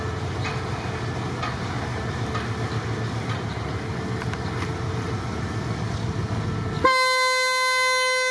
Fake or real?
real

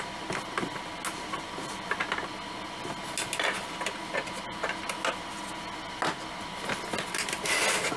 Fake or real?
real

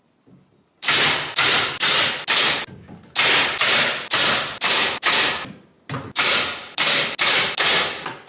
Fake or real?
real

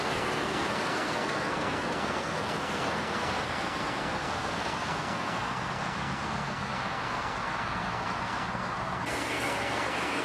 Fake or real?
fake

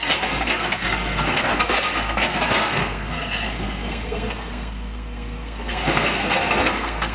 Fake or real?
fake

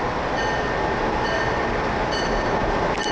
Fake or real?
real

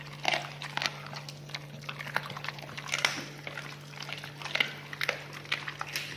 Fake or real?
real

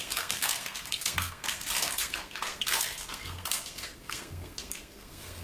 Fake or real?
fake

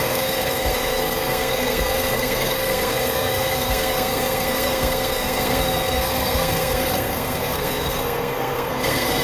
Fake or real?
fake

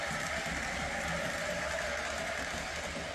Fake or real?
real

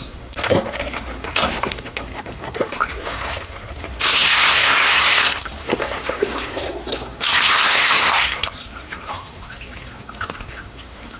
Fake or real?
fake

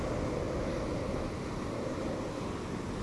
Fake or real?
real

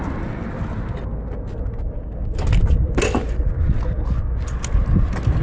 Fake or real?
real